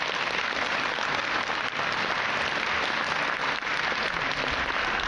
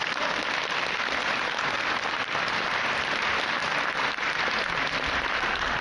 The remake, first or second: second